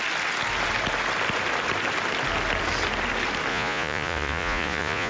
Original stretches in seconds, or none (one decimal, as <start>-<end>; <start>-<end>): 0.0-3.5